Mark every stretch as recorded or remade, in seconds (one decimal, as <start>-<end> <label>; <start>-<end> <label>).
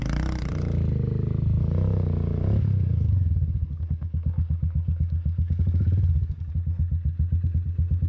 0.0-1.6 recorded; 1.6-6.5 remade; 6.5-8.1 recorded